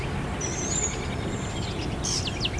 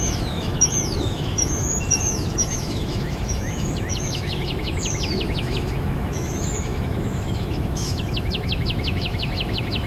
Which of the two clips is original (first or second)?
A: first